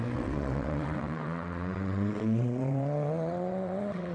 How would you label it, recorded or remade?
remade